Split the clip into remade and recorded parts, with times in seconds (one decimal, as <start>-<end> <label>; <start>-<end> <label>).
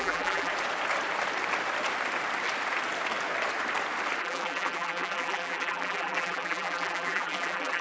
0.0-0.5 remade; 0.5-4.2 recorded; 4.2-7.8 remade